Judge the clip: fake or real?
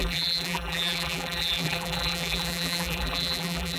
fake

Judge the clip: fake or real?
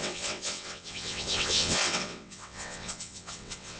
fake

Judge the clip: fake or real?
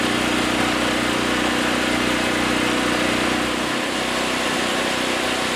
real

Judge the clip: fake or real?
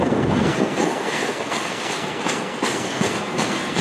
fake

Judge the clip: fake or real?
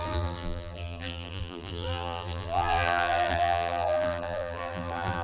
fake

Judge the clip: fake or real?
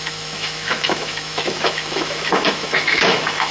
fake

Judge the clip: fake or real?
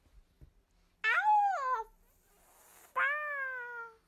real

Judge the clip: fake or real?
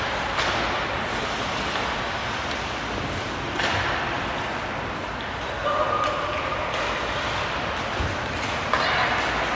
real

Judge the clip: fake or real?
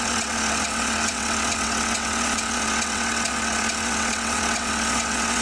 fake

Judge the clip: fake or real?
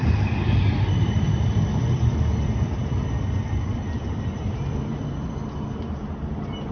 fake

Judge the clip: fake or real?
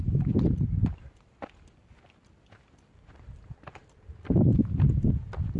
fake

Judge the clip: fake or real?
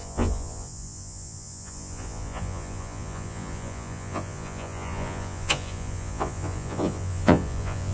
fake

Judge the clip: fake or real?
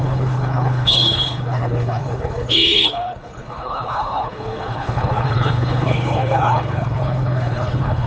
fake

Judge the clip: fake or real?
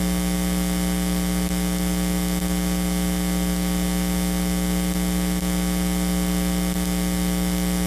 real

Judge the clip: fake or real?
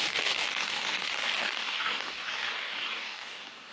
fake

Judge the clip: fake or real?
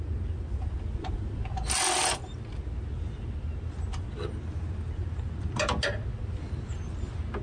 real